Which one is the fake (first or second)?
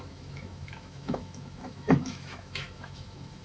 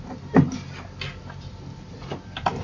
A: first